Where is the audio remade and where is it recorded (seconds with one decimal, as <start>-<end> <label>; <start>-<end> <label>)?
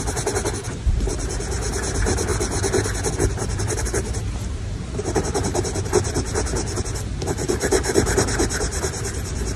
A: 0.0-2.3 remade; 2.3-3.1 recorded; 3.1-9.6 remade